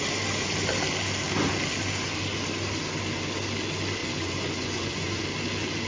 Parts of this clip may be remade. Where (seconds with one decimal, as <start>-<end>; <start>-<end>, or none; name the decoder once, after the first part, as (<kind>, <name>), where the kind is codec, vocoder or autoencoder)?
4.0-5.2 (vocoder, Vocos)